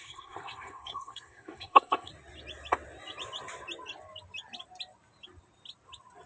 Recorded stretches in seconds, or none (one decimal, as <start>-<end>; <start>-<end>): 2.1-6.3